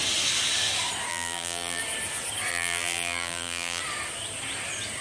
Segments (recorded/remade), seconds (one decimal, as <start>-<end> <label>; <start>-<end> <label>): 0.0-1.1 recorded; 1.1-1.8 remade; 1.8-2.5 recorded; 2.5-3.8 remade; 3.8-5.0 recorded